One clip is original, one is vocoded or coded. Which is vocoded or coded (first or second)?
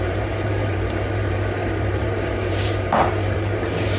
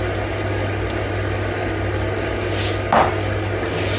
first